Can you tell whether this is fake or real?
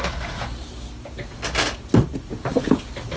real